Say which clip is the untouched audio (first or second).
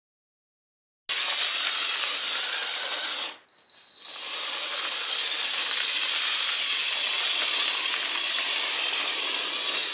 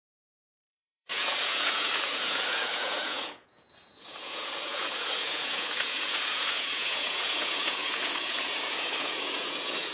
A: first